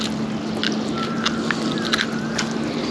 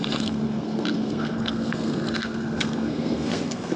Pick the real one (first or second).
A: first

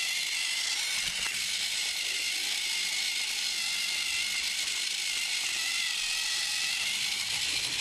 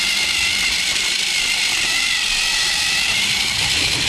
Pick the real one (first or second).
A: first